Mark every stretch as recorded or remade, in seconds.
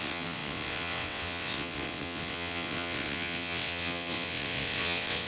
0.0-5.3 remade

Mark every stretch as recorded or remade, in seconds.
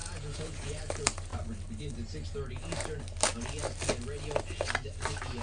0.0-0.8 remade; 0.8-5.4 recorded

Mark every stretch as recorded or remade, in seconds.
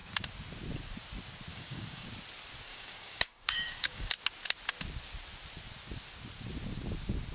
0.0-1.5 recorded; 1.5-2.1 remade; 2.1-2.7 recorded; 2.7-4.1 remade; 4.1-7.3 recorded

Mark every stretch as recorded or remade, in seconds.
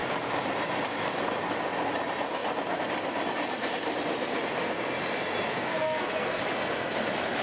0.0-5.5 recorded; 5.5-6.4 remade; 6.4-7.4 recorded